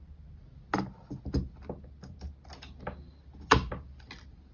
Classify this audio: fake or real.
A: real